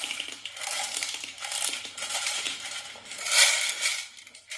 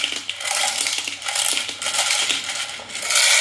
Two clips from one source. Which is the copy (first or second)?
first